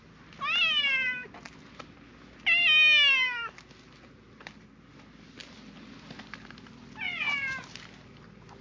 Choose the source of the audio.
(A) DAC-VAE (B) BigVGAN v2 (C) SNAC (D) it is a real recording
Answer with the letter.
D